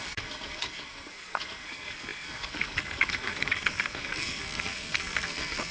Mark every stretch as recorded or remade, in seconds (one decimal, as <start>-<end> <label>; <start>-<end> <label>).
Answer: 0.0-5.7 remade